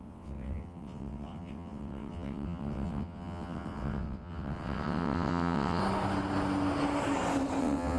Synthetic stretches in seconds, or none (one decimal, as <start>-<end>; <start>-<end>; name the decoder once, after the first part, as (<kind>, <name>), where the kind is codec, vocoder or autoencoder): 0.0-5.8 (vocoder, WaveNeXt); 7.6-8.0